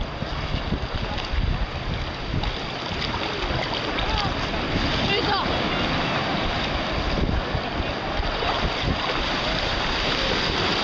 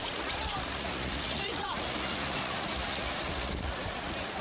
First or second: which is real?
first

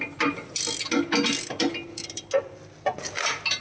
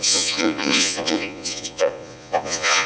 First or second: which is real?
first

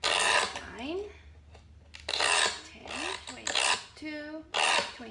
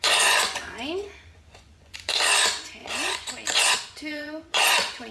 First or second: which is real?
first